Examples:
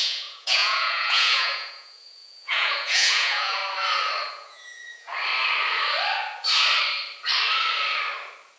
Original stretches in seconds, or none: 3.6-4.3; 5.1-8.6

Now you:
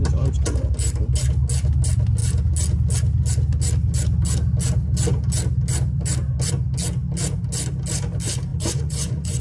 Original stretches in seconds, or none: 0.0-8.5

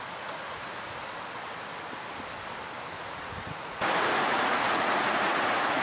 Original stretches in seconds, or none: 0.6-2.9

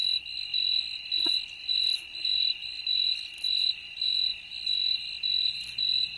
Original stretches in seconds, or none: 0.0-6.2

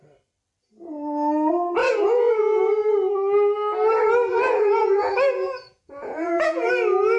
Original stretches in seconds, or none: 0.0-1.8; 2.6-4.3; 6.7-7.2

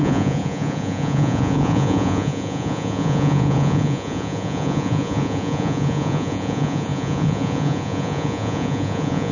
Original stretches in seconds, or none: none

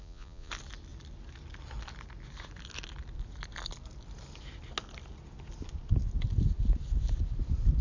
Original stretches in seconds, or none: 0.5-7.8